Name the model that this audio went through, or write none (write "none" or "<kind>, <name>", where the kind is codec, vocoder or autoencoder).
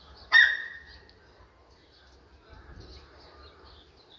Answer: none